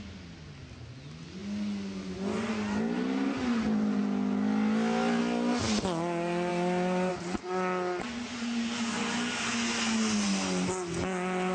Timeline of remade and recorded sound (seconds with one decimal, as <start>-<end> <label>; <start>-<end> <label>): 0.0-11.5 recorded